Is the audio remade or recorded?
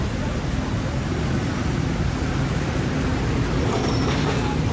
recorded